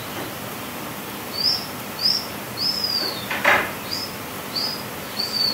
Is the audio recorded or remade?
remade